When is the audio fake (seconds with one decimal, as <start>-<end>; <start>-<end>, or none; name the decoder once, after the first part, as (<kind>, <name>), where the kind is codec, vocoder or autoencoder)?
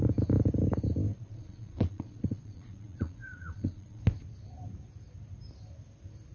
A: 1.1-4.0 (vocoder, Vocos)